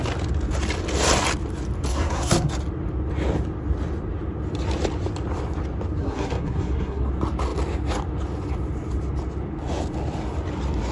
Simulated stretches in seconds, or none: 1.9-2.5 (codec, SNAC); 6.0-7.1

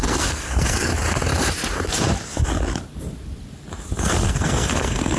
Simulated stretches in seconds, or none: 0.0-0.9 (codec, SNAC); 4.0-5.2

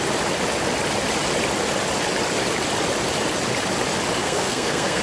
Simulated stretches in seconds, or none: 4.2-5.0 (codec, SNAC)

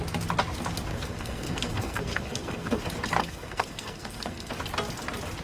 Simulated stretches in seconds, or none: 0.9-2.8 (codec, SNAC); 3.2-4.5

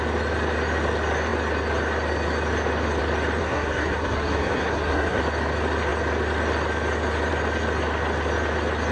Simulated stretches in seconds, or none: 3.4-5.2 (codec, SNAC)

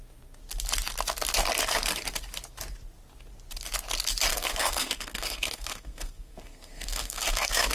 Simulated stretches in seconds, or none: 4.3-7.7 (codec, SNAC)

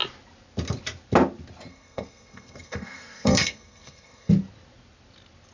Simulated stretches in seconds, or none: 1.7-4.3 (codec, SNAC)

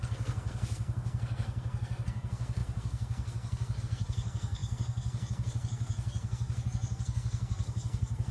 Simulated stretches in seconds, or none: 0.0-8.3 (codec, SNAC)